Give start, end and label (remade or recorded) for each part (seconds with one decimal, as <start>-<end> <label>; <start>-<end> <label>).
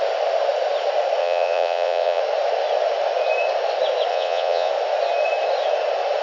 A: 0.0-1.2 recorded; 1.2-2.2 remade; 2.2-4.1 recorded; 4.1-4.7 remade; 4.7-6.2 recorded